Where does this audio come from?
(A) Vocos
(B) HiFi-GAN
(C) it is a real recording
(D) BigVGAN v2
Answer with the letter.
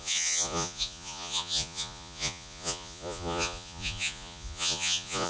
A